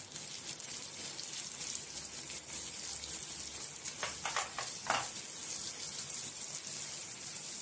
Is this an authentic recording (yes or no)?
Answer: yes